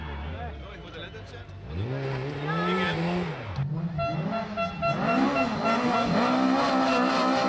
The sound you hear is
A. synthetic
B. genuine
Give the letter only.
B